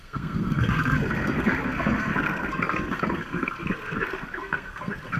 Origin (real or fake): fake